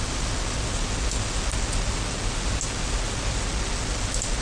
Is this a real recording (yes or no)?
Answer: yes